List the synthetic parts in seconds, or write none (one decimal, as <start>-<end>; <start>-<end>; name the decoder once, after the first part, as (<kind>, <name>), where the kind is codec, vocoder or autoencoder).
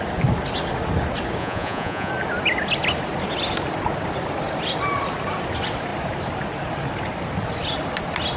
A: 1.4-2.1 (vocoder, Vocos)